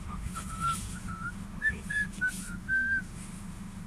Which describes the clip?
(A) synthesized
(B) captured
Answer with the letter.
A